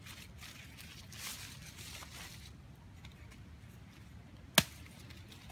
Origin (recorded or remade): recorded